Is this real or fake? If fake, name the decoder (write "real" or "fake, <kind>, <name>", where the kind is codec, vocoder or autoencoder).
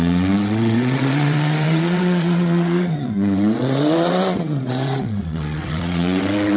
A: fake, vocoder, WaveNeXt